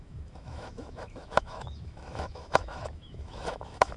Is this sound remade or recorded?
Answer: remade